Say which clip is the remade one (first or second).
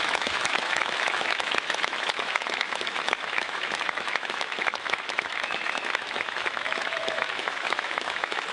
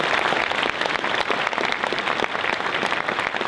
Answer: first